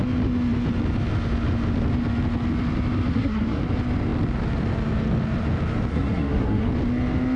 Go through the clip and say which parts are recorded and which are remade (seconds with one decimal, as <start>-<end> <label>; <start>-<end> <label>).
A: 0.0-3.1 recorded; 3.1-3.6 remade; 3.6-5.9 recorded; 5.9-6.7 remade; 6.7-7.4 recorded